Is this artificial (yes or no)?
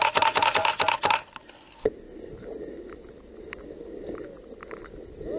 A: no